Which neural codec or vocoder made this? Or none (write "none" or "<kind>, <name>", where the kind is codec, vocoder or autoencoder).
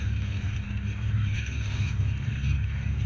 codec, DAC